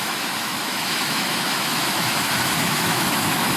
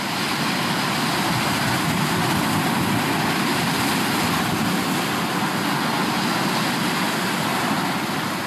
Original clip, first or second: second